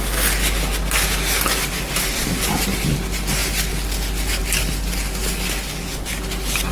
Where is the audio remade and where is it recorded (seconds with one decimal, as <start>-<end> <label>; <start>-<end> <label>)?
0.0-6.7 recorded

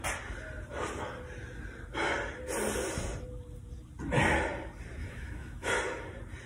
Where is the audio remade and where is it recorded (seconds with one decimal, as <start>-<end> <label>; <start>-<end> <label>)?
0.0-5.0 recorded; 5.0-5.7 remade; 5.7-6.5 recorded

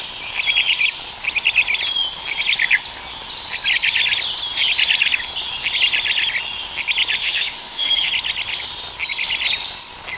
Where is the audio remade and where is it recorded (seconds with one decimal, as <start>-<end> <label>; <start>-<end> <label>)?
0.0-7.2 recorded; 7.2-8.1 remade; 8.1-10.2 recorded

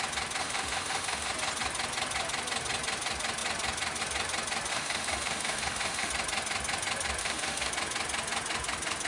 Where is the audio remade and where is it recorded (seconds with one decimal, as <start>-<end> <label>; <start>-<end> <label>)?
0.0-0.4 recorded; 0.4-1.3 remade; 1.3-4.7 recorded; 4.7-6.1 remade; 6.1-7.2 recorded; 7.2-7.7 remade; 7.7-9.1 recorded

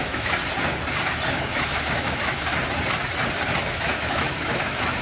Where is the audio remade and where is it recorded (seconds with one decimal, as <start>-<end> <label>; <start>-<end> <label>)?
0.0-0.4 remade; 0.4-1.3 recorded; 1.3-2.5 remade; 2.5-3.6 recorded; 3.6-5.0 remade

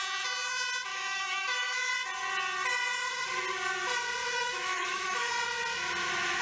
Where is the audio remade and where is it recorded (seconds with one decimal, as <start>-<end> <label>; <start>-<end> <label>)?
0.0-0.9 recorded; 0.9-1.9 remade; 1.9-4.2 recorded; 4.2-5.3 remade; 5.3-6.4 recorded